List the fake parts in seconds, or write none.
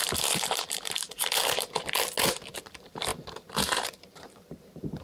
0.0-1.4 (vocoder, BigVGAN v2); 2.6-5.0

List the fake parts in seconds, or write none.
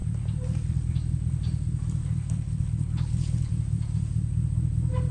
2.0-3.5 (codec, HILCodec)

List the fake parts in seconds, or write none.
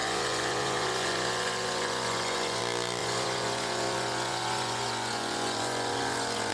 0.0-2.6 (vocoder, Vocos); 3.0-6.5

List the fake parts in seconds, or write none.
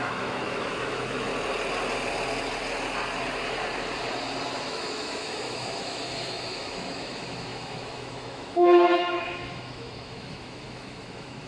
0.0-1.3 (autoencoder, DAC-VAE); 4.6-11.5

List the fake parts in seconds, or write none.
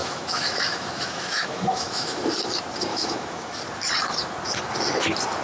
0.0-2.2 (autoencoder, DAC-VAE); 2.9-3.6